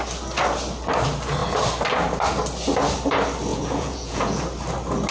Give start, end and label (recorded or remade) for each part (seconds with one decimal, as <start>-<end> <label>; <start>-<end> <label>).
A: 0.0-3.5 recorded; 3.5-4.4 remade; 4.4-5.1 recorded